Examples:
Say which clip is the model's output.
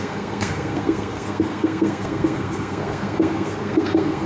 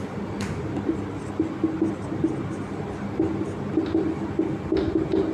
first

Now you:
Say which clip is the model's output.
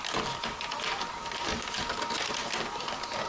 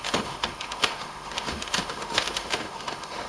second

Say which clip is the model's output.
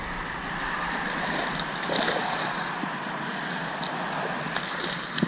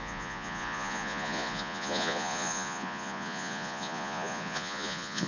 second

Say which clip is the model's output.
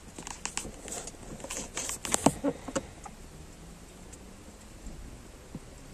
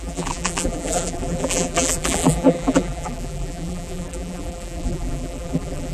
second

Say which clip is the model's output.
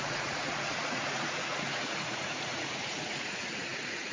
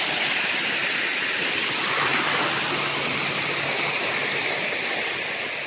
first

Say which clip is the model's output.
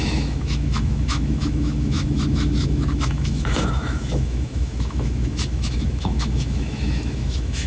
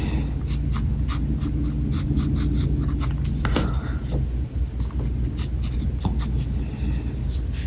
first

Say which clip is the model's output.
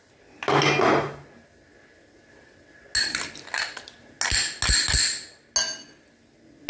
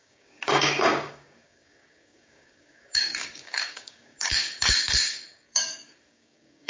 second